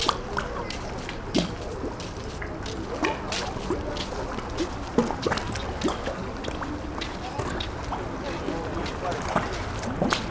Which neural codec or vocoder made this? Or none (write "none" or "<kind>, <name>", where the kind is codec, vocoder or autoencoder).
none